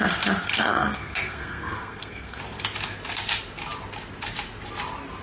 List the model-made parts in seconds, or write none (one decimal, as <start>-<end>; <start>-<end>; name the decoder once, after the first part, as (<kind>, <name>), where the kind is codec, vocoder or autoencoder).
0.5-2.4 (codec, SNAC)